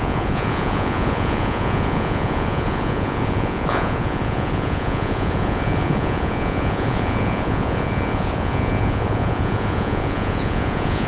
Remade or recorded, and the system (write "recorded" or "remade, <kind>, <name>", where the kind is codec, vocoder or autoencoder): remade, vocoder, Vocos